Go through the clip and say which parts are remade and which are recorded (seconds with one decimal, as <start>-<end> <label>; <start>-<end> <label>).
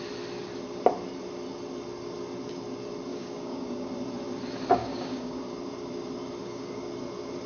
0.0-3.1 recorded; 3.1-3.9 remade; 3.9-4.8 recorded; 4.8-5.4 remade; 5.4-6.4 recorded; 6.4-6.9 remade; 6.9-7.5 recorded